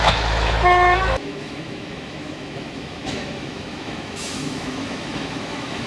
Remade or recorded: remade